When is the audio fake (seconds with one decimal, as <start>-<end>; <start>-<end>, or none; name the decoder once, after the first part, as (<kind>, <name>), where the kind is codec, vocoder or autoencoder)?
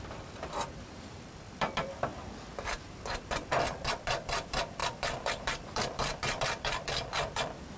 0.0-7.8 (vocoder, BigVGAN v2)